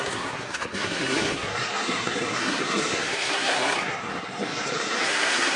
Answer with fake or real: fake